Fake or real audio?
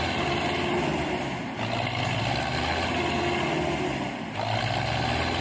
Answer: real